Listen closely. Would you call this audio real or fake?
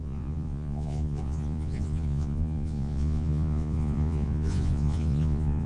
fake